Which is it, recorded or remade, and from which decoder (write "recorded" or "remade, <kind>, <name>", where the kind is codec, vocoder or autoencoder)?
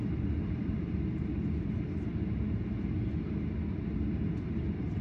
recorded